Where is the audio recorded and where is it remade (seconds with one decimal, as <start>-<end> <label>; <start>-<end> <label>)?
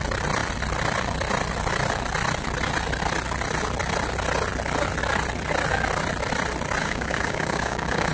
0.0-6.8 recorded; 6.8-8.1 remade